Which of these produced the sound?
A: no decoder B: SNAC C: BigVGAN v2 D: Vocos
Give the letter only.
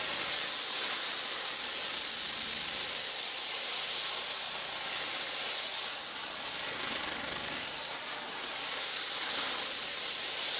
A